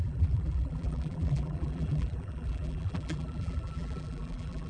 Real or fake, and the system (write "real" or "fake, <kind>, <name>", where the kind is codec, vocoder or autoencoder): fake, vocoder, BigVGAN v2